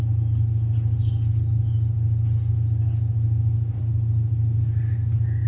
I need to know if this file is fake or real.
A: real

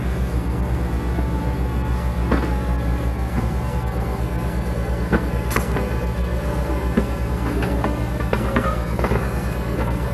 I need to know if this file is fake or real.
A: fake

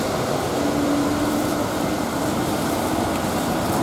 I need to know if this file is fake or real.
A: fake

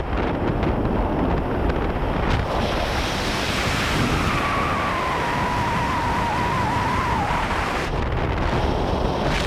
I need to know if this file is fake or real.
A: real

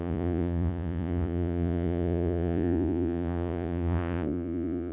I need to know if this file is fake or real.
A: fake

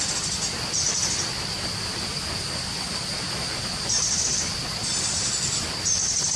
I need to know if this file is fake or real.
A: fake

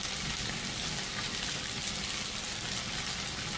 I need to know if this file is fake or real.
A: real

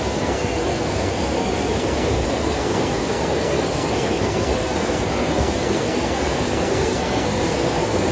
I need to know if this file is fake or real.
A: fake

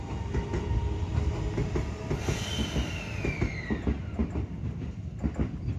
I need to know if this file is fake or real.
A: real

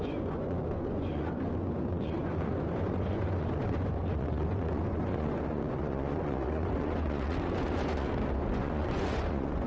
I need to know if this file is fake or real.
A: fake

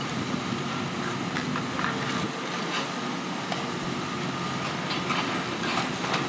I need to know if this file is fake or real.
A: real